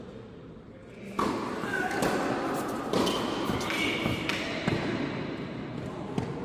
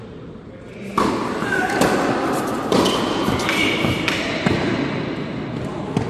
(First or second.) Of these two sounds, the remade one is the second